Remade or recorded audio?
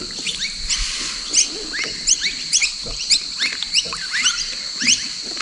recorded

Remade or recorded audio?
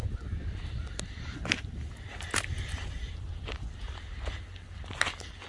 recorded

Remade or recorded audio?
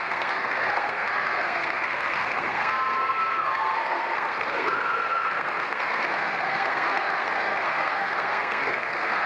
remade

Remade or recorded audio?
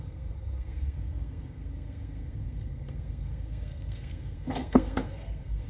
remade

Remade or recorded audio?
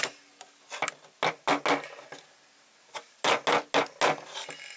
recorded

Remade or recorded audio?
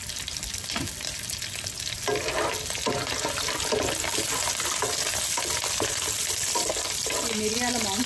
recorded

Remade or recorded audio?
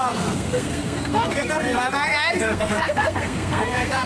remade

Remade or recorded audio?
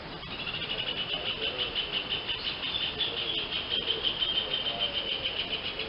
recorded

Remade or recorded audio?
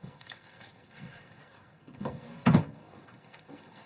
remade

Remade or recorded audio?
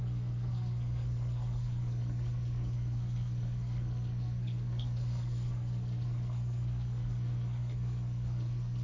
remade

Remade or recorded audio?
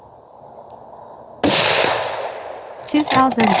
recorded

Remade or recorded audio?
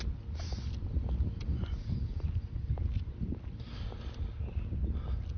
recorded